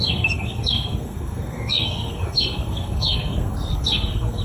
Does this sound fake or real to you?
fake